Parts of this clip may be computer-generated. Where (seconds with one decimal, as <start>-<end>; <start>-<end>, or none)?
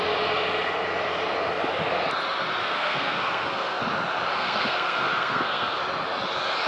2.6-3.8; 4.3-5.8